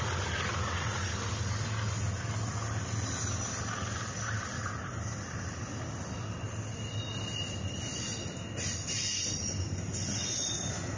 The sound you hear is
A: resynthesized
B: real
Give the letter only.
B